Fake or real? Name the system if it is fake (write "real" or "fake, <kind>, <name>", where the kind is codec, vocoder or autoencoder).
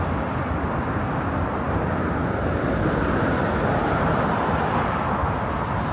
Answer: real